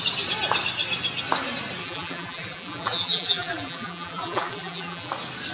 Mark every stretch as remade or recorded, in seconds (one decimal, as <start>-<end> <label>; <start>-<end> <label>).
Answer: 0.0-1.8 recorded; 1.8-5.1 remade; 5.1-5.5 recorded